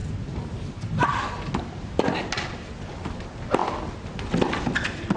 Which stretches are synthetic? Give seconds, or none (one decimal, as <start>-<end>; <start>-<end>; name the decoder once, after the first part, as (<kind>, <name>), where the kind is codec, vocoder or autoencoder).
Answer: 0.0-0.5 (vocoder, BigVGAN v2)